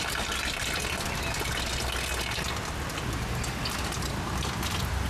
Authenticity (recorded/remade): recorded